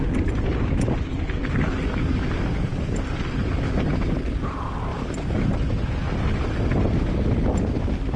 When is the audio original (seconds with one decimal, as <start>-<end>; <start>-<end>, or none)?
0.0-8.2